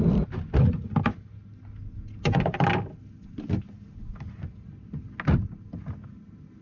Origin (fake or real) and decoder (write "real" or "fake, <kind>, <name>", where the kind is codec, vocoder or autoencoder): real